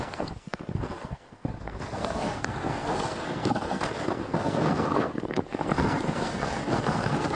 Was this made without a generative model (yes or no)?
no